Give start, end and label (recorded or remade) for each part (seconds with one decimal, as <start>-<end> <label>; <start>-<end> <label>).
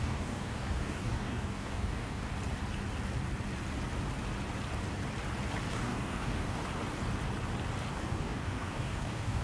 0.0-2.3 remade; 2.3-5.7 recorded; 5.7-6.6 remade; 6.6-7.9 recorded; 7.9-9.4 remade